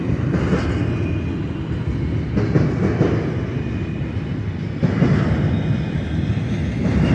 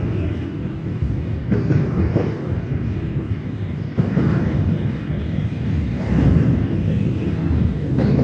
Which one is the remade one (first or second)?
second